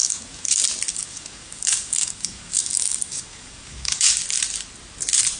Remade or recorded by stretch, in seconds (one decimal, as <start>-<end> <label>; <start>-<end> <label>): 0.0-0.6 remade; 0.6-1.0 recorded; 1.0-4.2 remade; 4.2-5.4 recorded